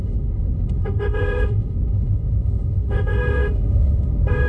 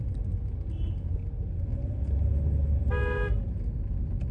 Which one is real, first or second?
second